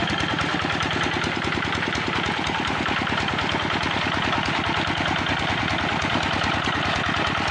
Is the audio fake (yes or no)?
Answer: no